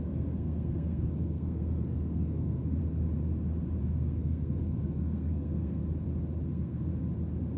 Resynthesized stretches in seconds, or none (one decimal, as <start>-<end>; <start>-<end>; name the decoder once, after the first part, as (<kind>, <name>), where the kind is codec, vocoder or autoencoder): 0.0-2.8 (codec, SNAC); 3.8-5.8; 6.5-6.9

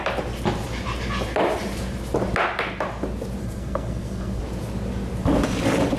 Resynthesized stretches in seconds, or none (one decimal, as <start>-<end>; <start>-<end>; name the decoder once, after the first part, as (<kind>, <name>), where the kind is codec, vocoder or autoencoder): 3.4-4.4 (codec, SNAC)